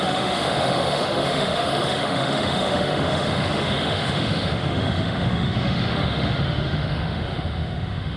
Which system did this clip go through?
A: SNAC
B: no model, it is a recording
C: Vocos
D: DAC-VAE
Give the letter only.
D